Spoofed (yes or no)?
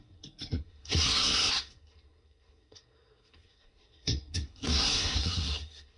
yes